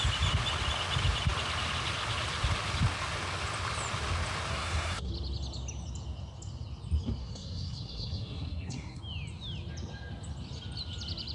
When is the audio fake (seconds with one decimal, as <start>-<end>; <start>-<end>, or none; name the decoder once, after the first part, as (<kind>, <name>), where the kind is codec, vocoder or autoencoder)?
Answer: 4.5-5.1 (codec, SNAC); 7.2-9.0